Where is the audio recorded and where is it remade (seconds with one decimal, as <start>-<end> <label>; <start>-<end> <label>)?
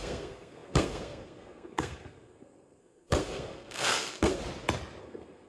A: 0.0-4.4 remade; 4.4-5.0 recorded; 5.0-5.5 remade